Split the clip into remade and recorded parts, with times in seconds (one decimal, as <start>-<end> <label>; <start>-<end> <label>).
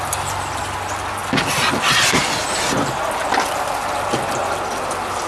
0.0-5.3 recorded